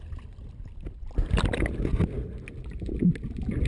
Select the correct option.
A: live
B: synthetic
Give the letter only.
A